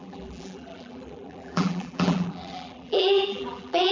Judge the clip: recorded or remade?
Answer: remade